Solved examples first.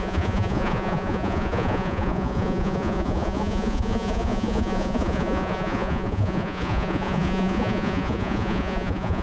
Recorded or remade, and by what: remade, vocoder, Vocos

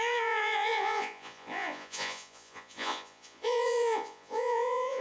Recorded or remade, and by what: remade, vocoder, Vocos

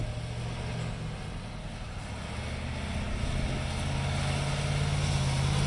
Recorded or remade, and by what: recorded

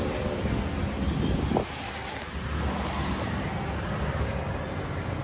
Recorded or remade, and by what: recorded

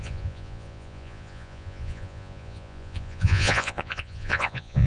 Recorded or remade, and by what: remade, vocoder, Vocos